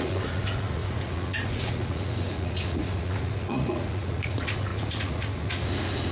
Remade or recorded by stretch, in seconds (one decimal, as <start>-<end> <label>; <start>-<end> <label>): 0.0-6.1 remade